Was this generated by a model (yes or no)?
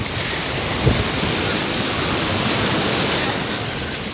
no